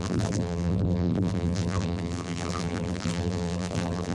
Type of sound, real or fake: fake